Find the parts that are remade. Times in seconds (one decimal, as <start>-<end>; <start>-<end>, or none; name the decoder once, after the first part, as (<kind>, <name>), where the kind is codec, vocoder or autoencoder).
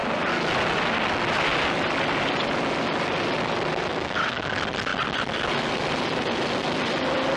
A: 3.9-4.5 (codec, DAC)